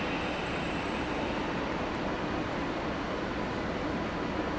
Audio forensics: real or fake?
real